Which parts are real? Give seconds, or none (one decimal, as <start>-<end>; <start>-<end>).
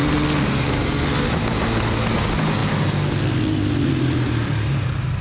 0.0-5.2